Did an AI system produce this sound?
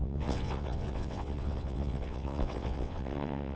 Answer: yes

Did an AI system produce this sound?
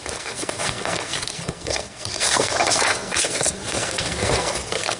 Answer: yes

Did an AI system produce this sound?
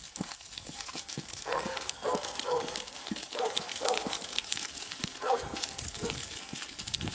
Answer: yes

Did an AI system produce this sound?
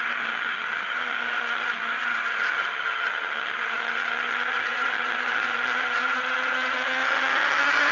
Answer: yes